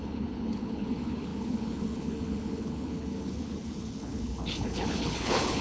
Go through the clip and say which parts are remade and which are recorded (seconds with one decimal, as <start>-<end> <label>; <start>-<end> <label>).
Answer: 0.0-5.6 remade

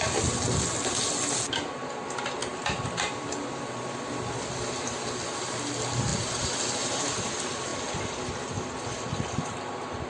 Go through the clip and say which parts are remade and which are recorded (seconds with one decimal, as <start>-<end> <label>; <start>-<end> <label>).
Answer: 0.0-10.1 recorded